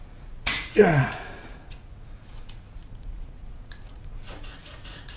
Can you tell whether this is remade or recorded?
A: remade